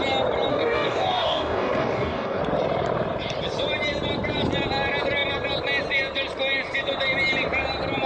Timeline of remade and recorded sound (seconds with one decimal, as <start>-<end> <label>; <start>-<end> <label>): 0.0-0.5 recorded; 0.5-2.4 remade; 2.4-8.1 recorded